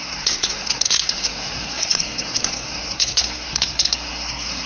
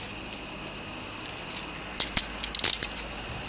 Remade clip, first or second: first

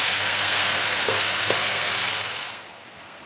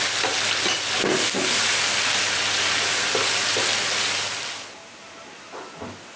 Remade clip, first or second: first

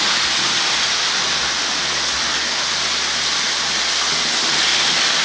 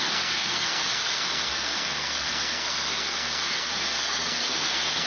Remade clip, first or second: second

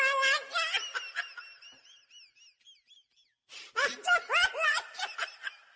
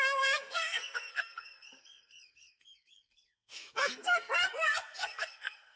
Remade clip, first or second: second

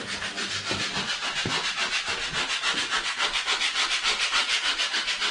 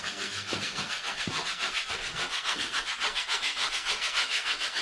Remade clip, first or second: second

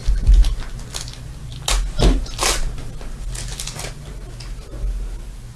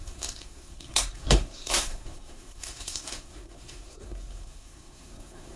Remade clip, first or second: second